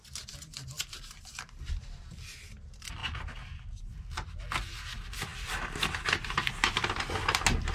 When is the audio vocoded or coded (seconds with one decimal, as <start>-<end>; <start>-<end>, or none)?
none